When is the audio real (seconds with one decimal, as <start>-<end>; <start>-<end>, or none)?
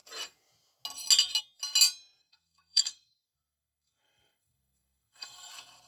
0.0-2.2; 5.5-5.9